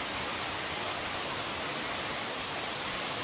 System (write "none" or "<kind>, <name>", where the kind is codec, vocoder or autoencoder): none